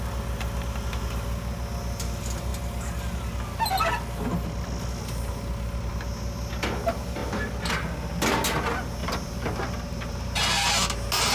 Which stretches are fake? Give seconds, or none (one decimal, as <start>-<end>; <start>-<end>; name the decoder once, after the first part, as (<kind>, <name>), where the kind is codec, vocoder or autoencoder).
9.0-10.4 (vocoder, BigVGAN v2)